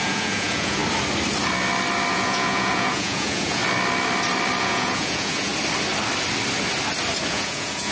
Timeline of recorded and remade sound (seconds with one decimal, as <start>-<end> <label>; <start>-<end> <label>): 0.0-0.8 remade; 0.8-2.1 recorded; 2.1-3.6 remade; 3.6-4.6 recorded; 4.6-5.5 remade; 5.5-7.3 recorded; 7.3-7.9 remade